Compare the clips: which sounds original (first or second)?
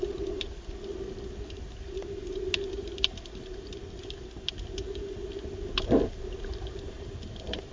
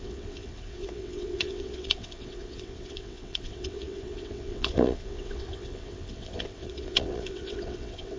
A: first